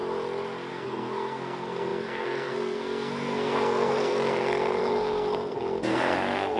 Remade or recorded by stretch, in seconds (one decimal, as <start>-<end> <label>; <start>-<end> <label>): 0.0-0.7 recorded; 0.7-6.6 remade